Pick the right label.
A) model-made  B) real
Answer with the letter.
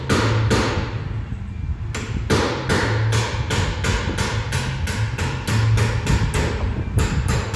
B